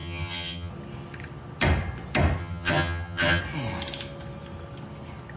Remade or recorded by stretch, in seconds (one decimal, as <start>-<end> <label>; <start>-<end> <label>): 0.0-0.7 remade; 0.7-2.4 recorded; 2.4-3.4 remade; 3.4-5.4 recorded